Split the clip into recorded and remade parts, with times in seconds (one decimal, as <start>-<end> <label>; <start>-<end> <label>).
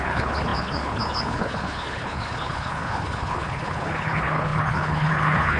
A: 0.0-5.6 remade